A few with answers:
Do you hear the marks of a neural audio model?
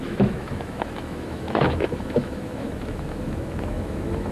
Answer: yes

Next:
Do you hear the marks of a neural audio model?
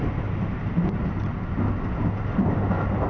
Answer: no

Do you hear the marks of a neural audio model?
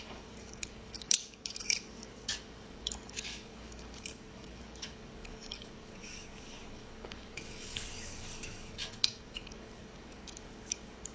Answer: yes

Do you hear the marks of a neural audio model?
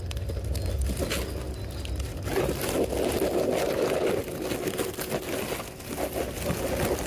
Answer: no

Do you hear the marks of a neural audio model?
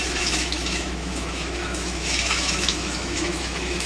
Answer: yes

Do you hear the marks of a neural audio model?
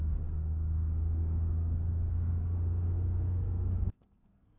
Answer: yes